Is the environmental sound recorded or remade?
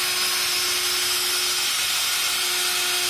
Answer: recorded